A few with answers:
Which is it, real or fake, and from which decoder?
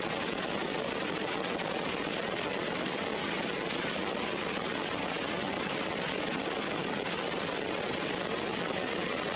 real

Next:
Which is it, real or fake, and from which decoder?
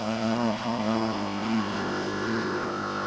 fake, codec, ZipCodec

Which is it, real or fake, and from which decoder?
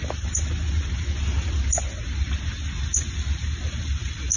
real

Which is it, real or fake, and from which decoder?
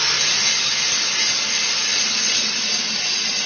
real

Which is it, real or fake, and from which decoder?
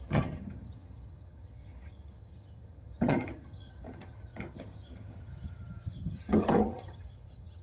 fake, vocoder, HiFi-GAN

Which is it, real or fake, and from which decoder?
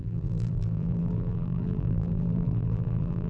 fake, vocoder, BigVGAN v2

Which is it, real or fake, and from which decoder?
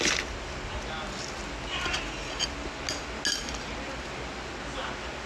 real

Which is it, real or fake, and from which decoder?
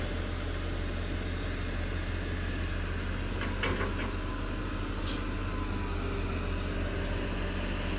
real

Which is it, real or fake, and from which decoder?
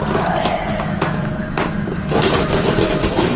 real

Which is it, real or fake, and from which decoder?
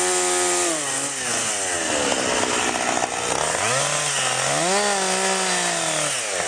real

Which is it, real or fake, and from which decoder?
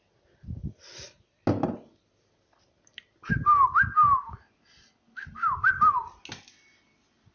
real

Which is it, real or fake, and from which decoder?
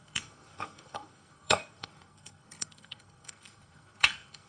fake, codec, SNAC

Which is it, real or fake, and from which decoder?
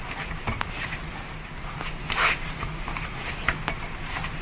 real